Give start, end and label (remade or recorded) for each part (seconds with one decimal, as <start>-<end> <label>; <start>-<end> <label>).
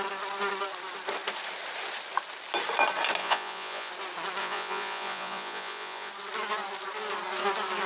0.0-3.2 recorded; 3.2-3.9 remade; 3.9-4.4 recorded; 4.4-6.1 remade; 6.1-7.9 recorded